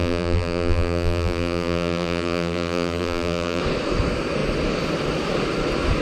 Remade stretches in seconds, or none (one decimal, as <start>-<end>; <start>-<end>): 0.0-3.6

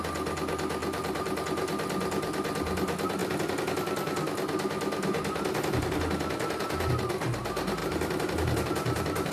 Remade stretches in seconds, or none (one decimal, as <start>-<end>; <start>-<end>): 0.8-1.4; 7.8-9.3

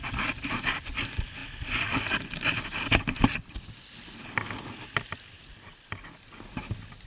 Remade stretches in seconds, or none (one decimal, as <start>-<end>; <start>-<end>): none

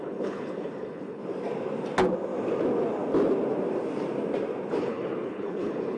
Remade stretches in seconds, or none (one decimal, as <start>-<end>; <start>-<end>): 0.0-1.2; 4.8-6.0

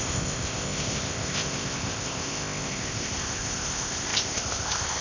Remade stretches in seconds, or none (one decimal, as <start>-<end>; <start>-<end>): 0.0-5.0

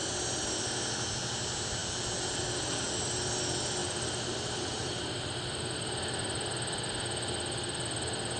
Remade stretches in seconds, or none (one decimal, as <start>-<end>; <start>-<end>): 3.8-5.3

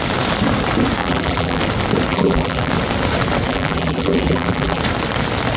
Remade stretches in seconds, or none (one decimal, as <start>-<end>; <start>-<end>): 1.0-1.6; 2.1-2.7; 3.5-4.8